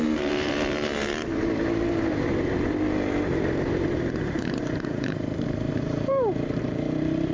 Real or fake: fake